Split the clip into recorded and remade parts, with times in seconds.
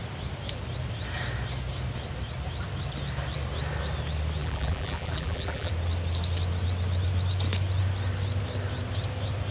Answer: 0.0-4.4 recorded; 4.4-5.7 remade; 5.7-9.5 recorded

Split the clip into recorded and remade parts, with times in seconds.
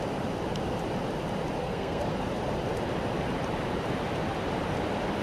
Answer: 0.0-1.6 recorded; 1.6-2.2 remade; 2.2-5.2 recorded